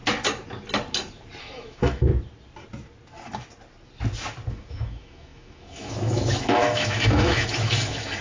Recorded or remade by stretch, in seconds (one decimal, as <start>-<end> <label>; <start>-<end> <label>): 0.0-1.4 recorded; 1.4-2.1 remade; 2.1-4.5 recorded; 4.5-8.2 remade